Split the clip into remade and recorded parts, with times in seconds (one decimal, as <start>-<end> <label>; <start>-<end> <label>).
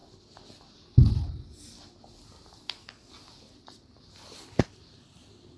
0.0-5.6 recorded